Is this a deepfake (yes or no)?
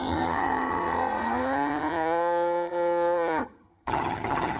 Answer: yes